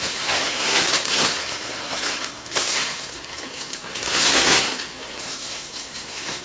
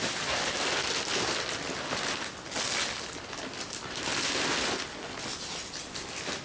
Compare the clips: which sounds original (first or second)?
second